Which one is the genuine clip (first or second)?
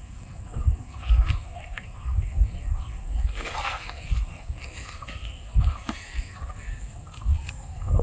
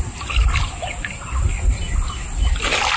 second